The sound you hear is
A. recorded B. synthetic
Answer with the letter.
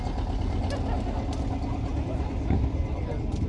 A